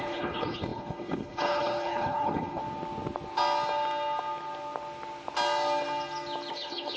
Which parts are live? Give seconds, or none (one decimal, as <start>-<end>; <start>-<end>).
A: 2.6-6.5